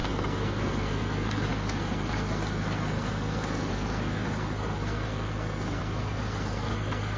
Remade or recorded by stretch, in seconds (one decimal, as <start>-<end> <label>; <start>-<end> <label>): 0.0-7.2 remade